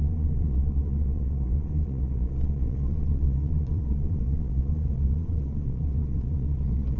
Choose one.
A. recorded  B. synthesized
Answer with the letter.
B